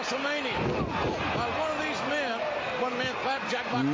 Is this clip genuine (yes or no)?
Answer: yes